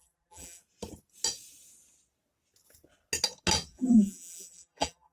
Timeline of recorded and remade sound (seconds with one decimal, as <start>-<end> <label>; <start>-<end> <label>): 0.0-0.6 remade; 0.6-3.7 recorded; 3.7-5.1 remade